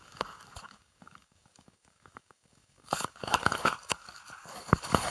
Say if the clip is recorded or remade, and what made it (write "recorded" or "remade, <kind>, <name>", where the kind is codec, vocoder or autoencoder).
remade, codec, DAC